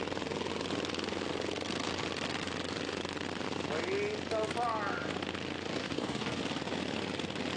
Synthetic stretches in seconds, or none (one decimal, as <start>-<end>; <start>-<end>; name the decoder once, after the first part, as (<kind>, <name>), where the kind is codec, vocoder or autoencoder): 5.8-6.4 (codec, DAC)